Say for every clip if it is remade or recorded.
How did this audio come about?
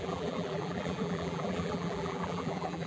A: remade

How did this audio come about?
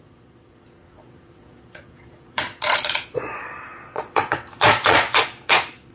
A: remade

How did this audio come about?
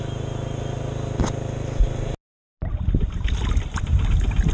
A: recorded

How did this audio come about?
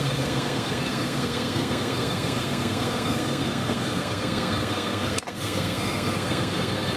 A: remade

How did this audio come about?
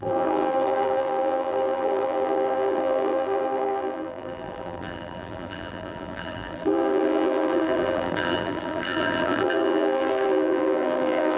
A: remade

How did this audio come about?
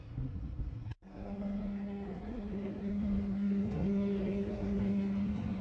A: remade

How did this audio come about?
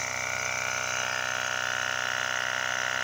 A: recorded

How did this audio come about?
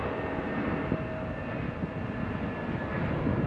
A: recorded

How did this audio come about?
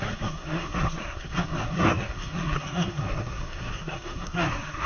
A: remade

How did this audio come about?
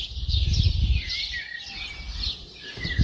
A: recorded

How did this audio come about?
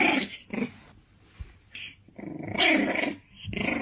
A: recorded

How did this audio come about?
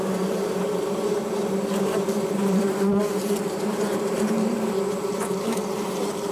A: remade